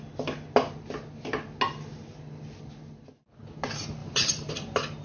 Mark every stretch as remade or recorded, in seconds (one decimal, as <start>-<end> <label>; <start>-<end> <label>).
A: 0.0-4.0 recorded; 4.0-4.5 remade; 4.5-5.0 recorded